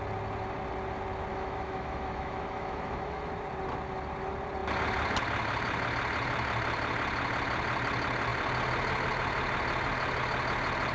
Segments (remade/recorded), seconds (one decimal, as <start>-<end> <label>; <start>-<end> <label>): 0.0-1.3 recorded; 1.3-3.3 remade; 3.3-10.9 recorded